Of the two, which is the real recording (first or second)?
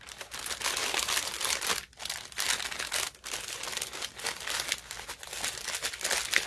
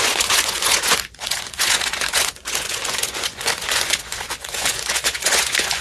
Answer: first